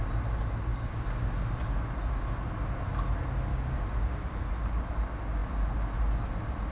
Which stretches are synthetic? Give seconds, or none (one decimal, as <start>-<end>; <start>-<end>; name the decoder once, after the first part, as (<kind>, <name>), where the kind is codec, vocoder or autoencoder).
0.7-1.3 (codec, DAC); 3.5-4.4